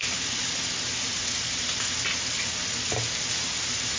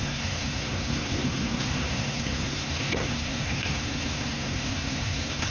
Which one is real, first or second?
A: first